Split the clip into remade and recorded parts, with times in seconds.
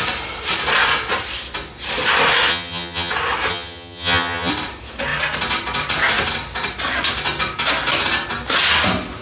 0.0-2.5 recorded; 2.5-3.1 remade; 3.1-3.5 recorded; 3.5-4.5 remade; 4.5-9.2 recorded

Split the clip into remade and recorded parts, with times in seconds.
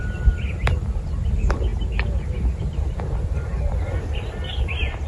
0.0-5.1 recorded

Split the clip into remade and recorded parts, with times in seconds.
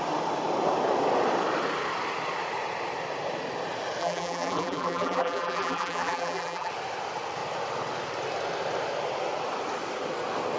0.0-4.0 recorded; 4.0-6.7 remade; 6.7-10.6 recorded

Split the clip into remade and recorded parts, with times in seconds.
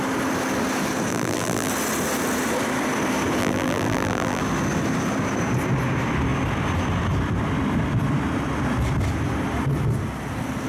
0.0-1.1 recorded; 1.1-1.7 remade; 1.7-3.4 recorded; 3.4-4.4 remade; 4.4-10.7 recorded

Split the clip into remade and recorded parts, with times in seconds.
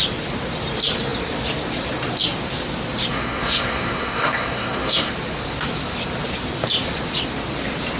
0.0-3.1 recorded; 3.1-5.1 remade; 5.1-8.0 recorded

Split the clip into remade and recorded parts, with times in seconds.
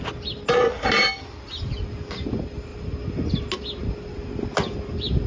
0.0-5.3 recorded